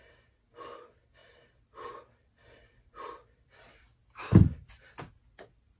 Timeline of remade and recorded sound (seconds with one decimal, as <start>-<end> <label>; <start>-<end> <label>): 0.0-1.2 recorded; 1.2-4.7 remade; 4.7-5.8 recorded